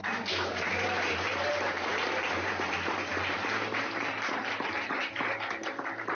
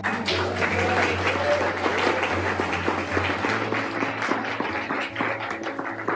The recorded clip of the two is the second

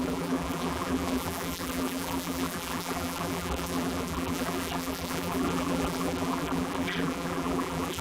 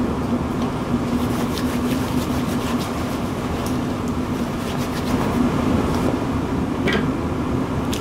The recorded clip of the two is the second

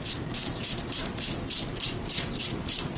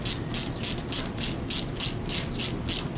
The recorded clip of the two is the second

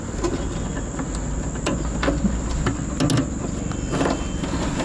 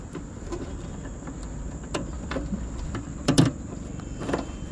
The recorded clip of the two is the first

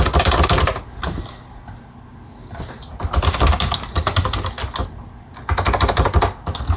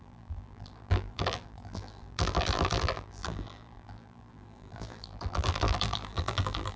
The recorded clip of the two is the first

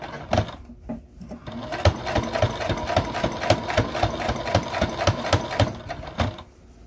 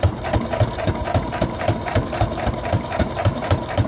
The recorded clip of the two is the first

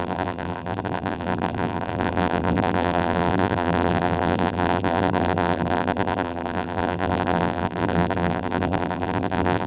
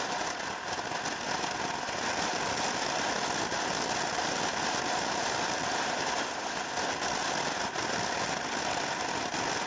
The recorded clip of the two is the second